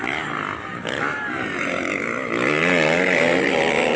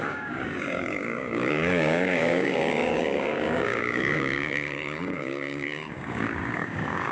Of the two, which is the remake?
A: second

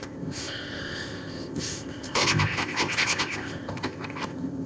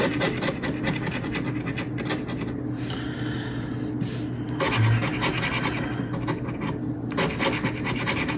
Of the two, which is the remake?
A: first